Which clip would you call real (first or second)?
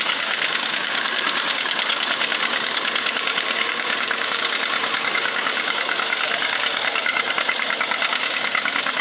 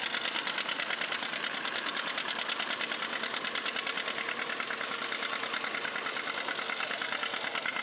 second